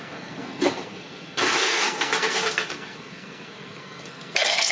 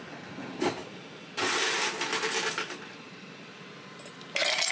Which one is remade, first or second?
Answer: first